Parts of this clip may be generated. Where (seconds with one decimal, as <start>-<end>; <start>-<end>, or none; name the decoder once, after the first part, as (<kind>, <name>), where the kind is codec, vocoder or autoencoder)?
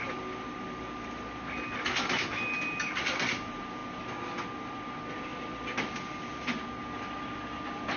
none